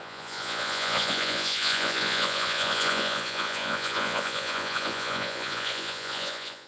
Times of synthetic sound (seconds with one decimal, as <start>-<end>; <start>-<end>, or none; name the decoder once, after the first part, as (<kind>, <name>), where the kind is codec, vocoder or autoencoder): 0.0-6.7 (vocoder, Vocos)